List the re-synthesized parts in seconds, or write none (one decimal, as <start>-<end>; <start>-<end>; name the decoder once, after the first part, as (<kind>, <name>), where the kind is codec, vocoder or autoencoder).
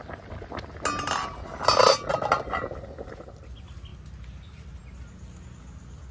none